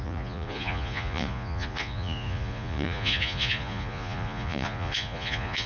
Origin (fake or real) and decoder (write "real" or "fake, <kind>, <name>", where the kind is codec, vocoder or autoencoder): fake, vocoder, Vocos